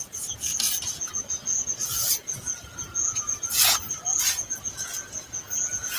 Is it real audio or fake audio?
fake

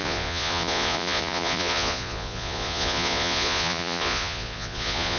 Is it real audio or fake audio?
fake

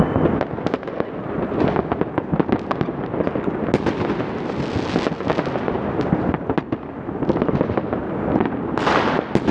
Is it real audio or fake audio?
real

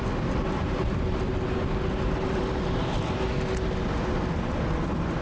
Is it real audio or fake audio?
real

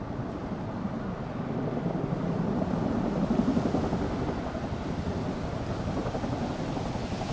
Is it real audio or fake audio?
real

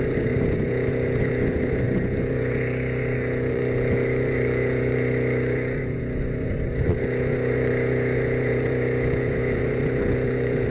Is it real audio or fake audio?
fake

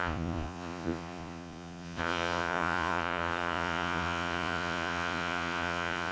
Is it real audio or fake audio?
fake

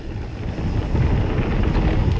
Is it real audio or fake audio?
real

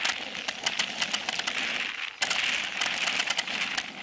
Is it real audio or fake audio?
real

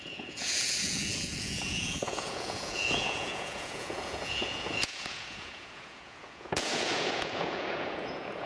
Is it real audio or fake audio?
fake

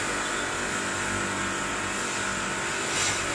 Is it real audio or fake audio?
real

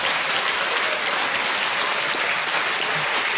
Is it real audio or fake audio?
real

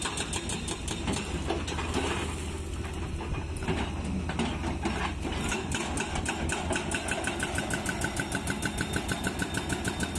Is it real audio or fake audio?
real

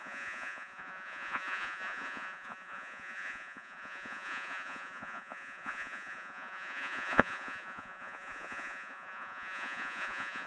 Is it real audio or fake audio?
fake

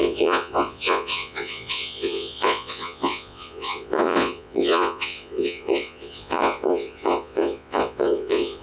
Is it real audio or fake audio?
fake